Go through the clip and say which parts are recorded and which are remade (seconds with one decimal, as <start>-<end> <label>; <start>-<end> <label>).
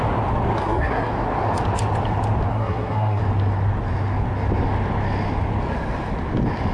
0.0-0.6 recorded; 0.6-1.1 remade; 1.1-2.5 recorded; 2.5-3.2 remade; 3.2-6.7 recorded